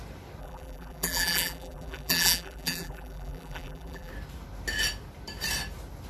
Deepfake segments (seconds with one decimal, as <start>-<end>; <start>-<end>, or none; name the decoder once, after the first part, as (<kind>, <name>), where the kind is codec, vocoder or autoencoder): 0.4-4.1 (vocoder, BigVGAN v2)